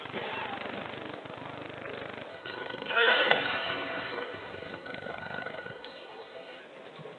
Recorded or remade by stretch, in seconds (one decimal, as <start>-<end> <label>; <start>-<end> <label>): 0.0-2.3 recorded; 2.3-6.6 remade; 6.6-7.2 recorded